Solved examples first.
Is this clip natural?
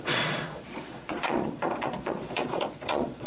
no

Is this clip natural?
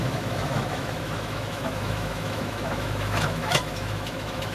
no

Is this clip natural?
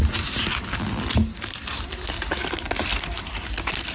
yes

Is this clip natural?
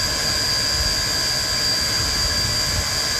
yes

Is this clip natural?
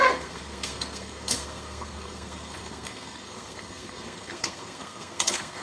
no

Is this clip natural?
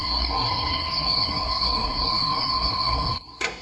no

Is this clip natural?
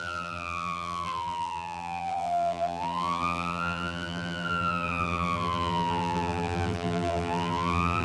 no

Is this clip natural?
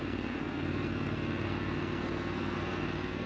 no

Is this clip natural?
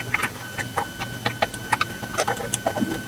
yes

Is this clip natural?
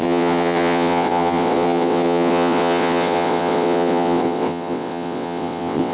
no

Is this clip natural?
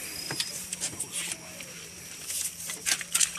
no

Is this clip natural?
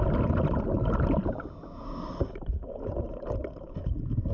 yes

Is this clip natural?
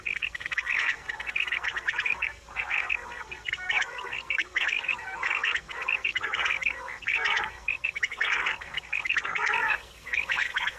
no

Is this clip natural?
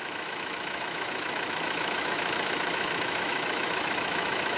no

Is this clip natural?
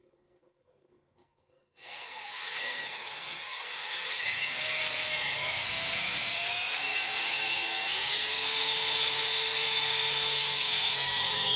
no